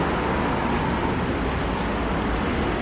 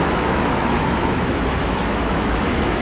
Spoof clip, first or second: second